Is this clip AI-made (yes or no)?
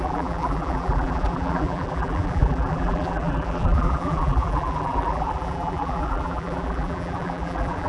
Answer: yes